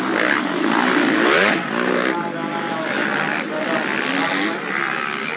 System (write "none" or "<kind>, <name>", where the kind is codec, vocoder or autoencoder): none